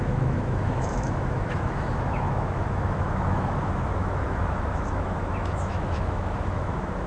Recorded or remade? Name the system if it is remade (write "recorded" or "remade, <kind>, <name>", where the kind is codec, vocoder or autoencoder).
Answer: remade, autoencoder, DAC-VAE